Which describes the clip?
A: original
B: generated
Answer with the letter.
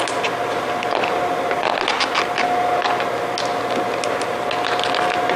A